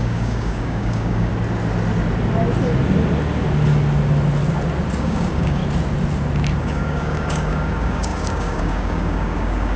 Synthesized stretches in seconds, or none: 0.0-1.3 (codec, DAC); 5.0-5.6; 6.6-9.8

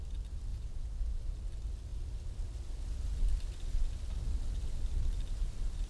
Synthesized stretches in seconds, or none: 0.5-1.1 (vocoder, Vocos)

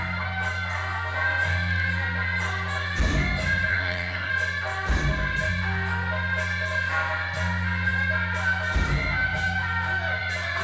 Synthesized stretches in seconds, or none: 3.7-4.3 (codec, SNAC)